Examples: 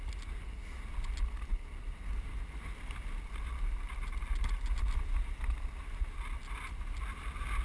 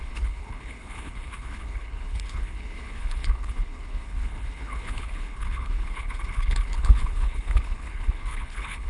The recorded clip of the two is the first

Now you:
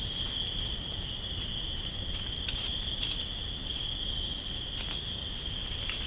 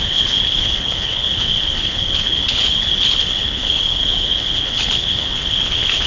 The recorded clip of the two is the first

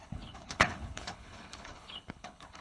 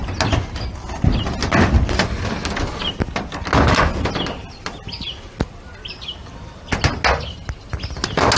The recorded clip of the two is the second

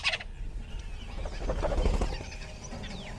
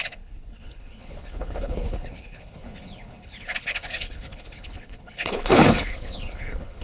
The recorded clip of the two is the first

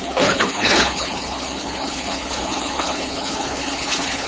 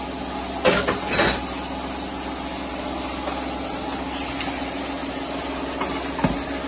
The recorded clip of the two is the second